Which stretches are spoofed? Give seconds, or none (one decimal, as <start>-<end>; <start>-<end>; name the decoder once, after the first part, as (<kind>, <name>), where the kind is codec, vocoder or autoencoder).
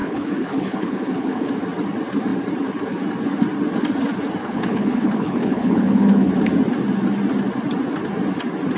0.0-1.5 (codec, HILCodec); 4.4-6.3